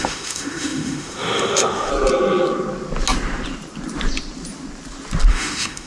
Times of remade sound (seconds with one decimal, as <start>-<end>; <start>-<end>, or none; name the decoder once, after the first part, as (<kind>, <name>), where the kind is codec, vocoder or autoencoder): 0.0-1.9 (autoencoder, DAC-VAE); 5.3-5.9